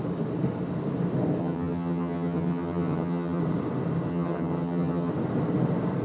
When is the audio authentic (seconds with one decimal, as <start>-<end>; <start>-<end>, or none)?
0.0-1.4; 3.4-4.1; 5.1-6.0

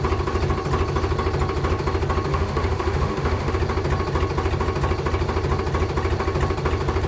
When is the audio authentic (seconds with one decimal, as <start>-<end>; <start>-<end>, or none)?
0.0-2.3; 3.5-7.1

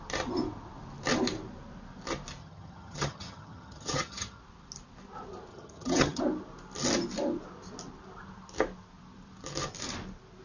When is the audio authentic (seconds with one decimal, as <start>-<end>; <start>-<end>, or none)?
0.0-2.4; 4.4-5.5; 6.2-10.4